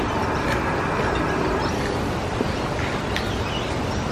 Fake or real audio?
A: real